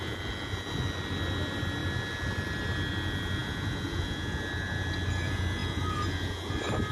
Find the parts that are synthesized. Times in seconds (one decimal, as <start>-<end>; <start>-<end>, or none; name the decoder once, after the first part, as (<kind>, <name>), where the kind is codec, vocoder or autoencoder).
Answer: none